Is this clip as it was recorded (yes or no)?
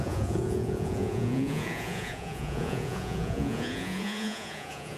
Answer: no